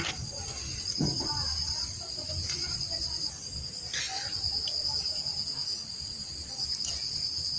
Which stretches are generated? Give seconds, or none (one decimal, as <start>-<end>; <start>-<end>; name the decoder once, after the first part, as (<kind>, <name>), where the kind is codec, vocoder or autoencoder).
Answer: 0.0-0.8 (vocoder, BigVGAN v2)